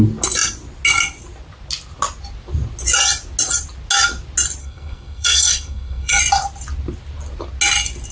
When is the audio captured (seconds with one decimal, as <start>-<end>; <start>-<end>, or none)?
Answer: 0.0-4.6; 6.2-8.1